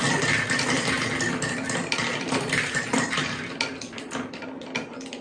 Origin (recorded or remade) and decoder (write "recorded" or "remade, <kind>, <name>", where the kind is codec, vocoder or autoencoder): recorded